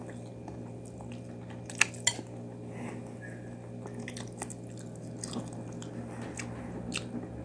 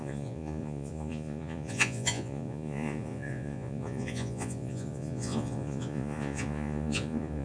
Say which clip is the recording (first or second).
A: first